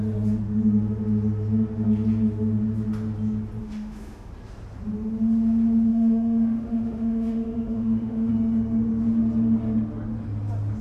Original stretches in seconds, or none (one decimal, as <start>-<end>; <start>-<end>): 0.0-3.6; 4.3-5.9; 8.3-10.8